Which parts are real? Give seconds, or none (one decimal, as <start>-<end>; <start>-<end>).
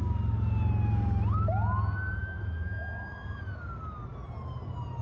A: 0.0-2.2; 3.4-5.0